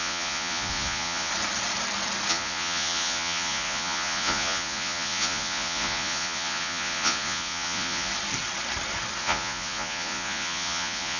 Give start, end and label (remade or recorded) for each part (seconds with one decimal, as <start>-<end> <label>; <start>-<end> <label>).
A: 0.0-1.3 remade; 1.3-2.3 recorded; 2.3-8.1 remade; 8.1-9.2 recorded; 9.2-11.2 remade